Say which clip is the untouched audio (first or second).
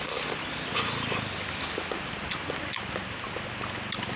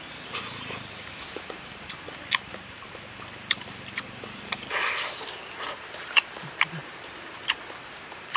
first